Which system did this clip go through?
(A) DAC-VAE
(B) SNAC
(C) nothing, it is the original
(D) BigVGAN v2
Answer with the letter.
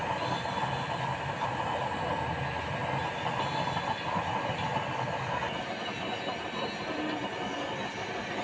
C